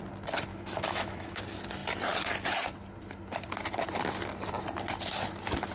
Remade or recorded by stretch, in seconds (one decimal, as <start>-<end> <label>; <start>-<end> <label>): 0.0-0.5 recorded; 0.5-1.4 remade; 1.4-5.7 recorded